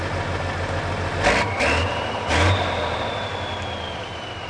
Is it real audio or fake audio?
real